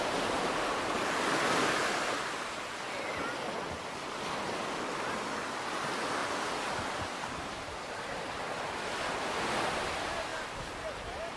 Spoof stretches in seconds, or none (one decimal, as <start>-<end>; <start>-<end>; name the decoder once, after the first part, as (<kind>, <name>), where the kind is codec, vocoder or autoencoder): 6.2-7.0 (vocoder, BigVGAN v2)